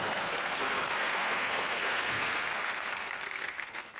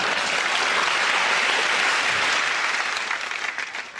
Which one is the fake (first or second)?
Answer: first